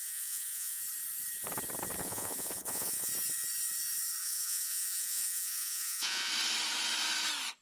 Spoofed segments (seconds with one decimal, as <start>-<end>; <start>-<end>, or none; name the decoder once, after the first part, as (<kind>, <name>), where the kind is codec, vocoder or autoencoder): 0.0-0.8 (vocoder, Vocos); 2.0-3.1; 4.2-6.3